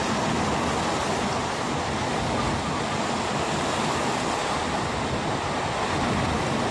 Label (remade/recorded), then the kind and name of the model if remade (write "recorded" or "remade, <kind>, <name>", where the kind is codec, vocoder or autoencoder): recorded